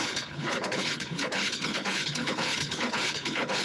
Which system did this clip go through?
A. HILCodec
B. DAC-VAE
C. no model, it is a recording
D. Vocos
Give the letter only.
A